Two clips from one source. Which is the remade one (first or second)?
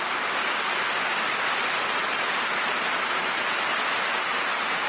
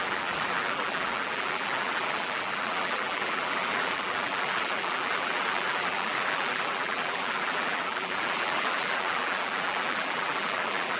second